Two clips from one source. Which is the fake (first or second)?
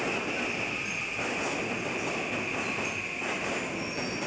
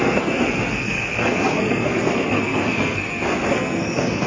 second